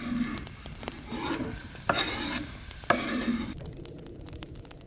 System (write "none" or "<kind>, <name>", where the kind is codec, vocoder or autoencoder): none